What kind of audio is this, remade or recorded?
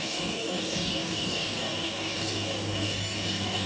remade